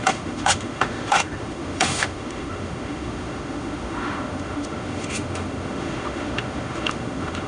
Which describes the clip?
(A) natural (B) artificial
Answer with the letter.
B